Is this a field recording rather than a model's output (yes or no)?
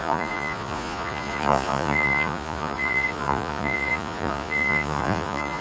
no